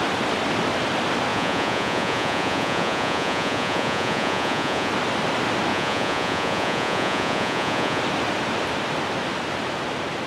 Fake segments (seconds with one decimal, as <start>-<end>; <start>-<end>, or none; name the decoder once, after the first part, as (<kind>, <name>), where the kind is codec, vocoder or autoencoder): 1.3-4.9 (vocoder, Vocos); 5.7-8.0